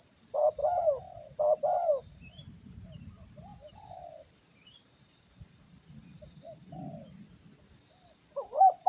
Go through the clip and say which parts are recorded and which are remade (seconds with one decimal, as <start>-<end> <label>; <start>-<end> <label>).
0.0-0.6 remade; 0.6-2.3 recorded; 2.3-3.5 remade; 3.5-4.5 recorded; 4.5-6.0 remade; 6.0-8.2 recorded; 8.2-8.9 remade

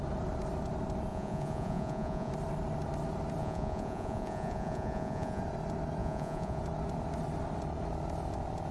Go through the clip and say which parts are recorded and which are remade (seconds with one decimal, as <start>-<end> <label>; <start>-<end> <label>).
0.0-1.1 recorded; 1.1-2.3 remade; 2.3-3.4 recorded; 3.4-5.4 remade; 5.4-6.0 recorded; 6.0-6.6 remade; 6.6-8.7 recorded

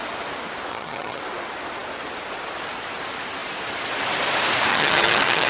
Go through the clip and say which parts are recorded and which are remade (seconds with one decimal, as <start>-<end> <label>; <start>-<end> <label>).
0.0-0.7 recorded; 0.7-1.2 remade; 1.2-4.7 recorded; 4.7-5.5 remade

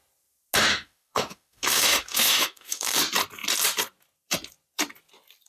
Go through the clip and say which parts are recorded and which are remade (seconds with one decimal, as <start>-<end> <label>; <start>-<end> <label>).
0.0-0.7 recorded; 0.7-3.0 remade; 3.0-5.5 recorded

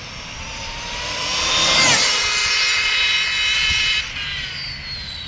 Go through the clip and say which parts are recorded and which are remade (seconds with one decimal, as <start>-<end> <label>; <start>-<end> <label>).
0.0-3.0 remade; 3.0-5.3 recorded

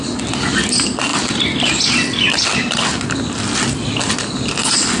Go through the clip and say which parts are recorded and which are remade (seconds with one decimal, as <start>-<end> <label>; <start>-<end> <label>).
0.0-5.0 recorded